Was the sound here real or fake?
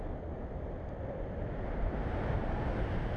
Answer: real